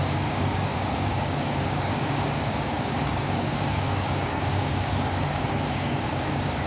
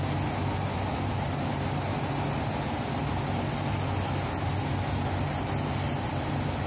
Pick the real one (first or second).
second